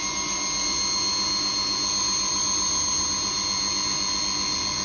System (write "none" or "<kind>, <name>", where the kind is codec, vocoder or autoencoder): none